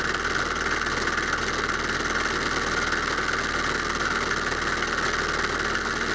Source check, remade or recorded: recorded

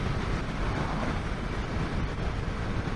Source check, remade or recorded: recorded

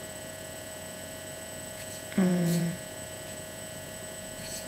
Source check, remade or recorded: remade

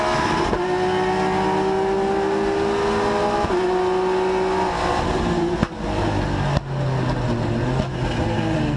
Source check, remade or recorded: recorded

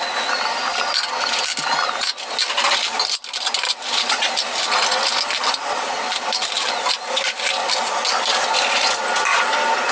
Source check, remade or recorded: recorded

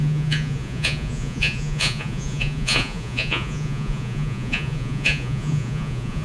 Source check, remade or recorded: remade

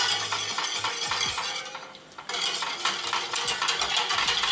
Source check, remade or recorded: recorded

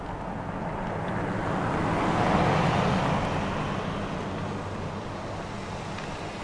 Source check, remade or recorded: recorded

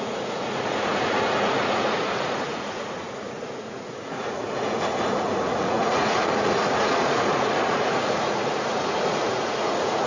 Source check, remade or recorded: remade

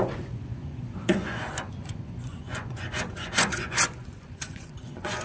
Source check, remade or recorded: remade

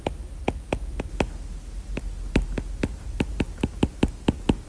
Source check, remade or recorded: recorded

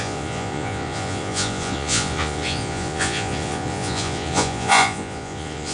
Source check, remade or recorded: remade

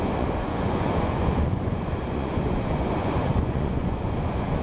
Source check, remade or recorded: remade